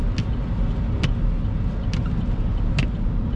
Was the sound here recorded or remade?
recorded